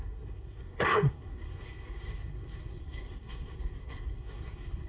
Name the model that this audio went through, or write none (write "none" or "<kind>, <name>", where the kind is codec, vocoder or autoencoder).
codec, SNAC